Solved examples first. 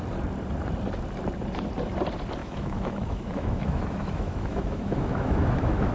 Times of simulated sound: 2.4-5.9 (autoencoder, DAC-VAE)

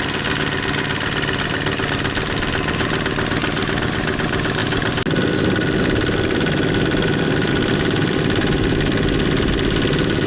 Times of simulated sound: none

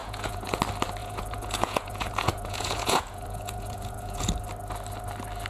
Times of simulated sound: 0.0-0.6 (vocoder, Vocos); 1.0-4.3